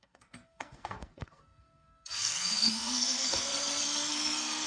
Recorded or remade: remade